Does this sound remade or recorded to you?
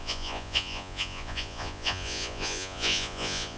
remade